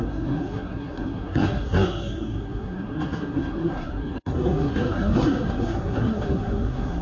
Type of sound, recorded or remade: remade